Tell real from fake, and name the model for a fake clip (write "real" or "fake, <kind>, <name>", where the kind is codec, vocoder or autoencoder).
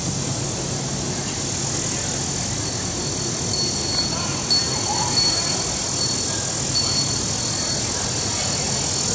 real